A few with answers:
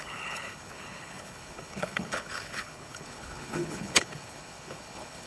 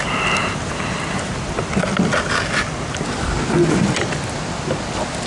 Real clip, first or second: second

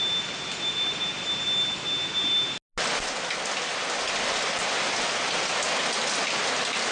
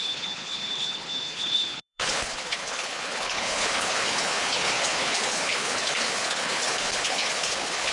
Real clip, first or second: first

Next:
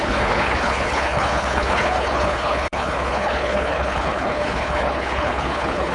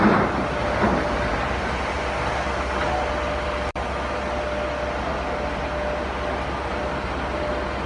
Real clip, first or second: second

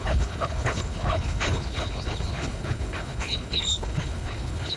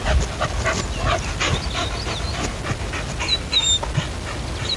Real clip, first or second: second